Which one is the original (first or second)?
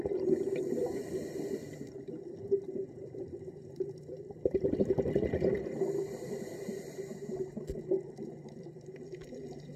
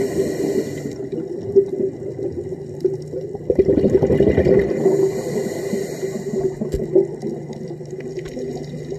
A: second